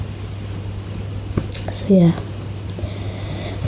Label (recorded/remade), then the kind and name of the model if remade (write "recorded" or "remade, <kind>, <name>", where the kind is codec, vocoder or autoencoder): recorded